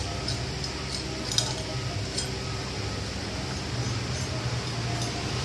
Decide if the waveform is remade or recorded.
recorded